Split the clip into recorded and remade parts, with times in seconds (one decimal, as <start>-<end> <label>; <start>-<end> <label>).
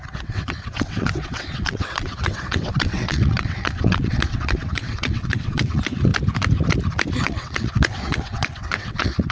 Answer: 0.0-6.1 remade; 6.1-7.2 recorded; 7.2-9.3 remade